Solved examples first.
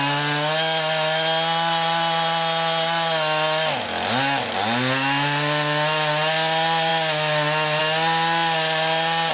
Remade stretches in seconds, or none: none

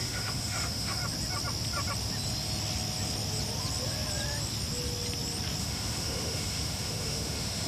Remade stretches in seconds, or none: 0.0-1.0; 5.6-7.7